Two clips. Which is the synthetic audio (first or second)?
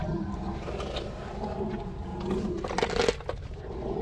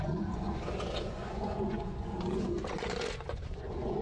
second